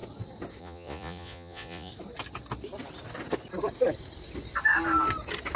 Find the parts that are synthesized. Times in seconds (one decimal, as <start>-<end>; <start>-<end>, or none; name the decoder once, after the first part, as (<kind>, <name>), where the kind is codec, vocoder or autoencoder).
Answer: 0.6-1.9 (vocoder, Vocos)